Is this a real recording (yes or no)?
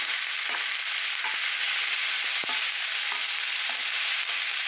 yes